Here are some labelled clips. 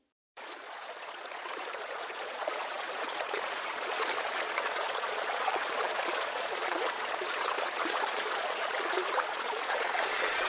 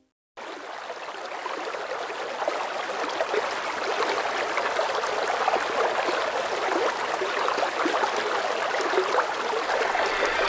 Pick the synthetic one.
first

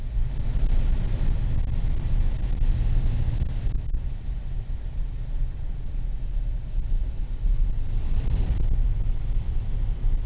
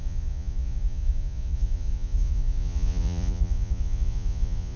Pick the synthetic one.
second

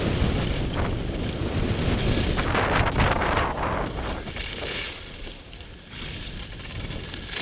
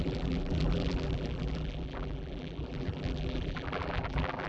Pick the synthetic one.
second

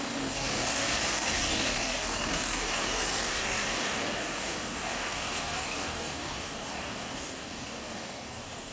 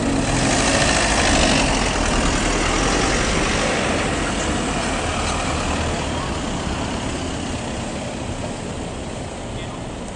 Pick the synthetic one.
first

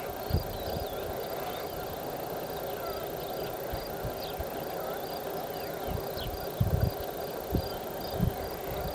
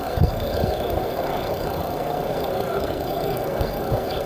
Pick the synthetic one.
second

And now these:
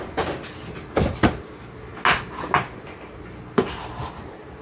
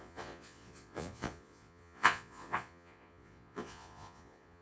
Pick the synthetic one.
second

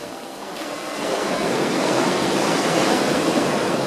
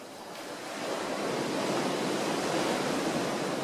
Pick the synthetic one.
first